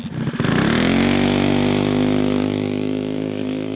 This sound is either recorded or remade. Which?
recorded